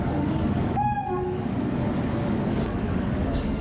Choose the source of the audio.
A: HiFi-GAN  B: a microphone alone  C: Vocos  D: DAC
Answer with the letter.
D